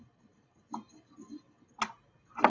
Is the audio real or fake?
real